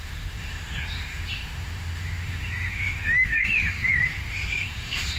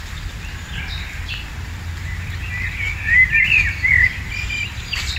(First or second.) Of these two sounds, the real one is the second